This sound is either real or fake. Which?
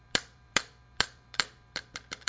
fake